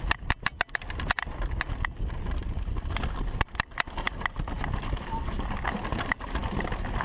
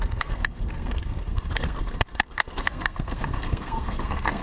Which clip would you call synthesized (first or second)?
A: second